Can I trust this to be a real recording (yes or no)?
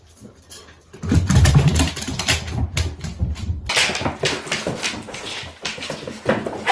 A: yes